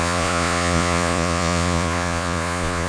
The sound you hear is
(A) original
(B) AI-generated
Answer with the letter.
B